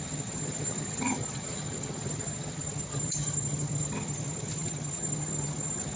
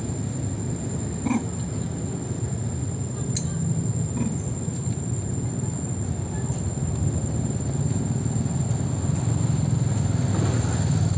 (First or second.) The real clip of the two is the second